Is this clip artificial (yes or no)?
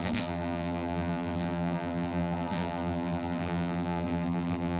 yes